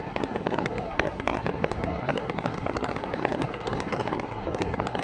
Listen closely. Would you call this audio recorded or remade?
remade